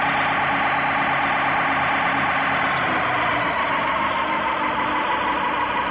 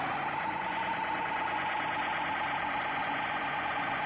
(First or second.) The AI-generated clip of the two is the second